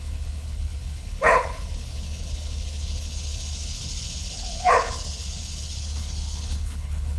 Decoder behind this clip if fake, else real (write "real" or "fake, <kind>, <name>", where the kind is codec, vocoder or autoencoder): fake, codec, HILCodec